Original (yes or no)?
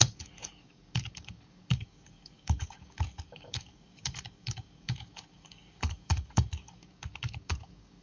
no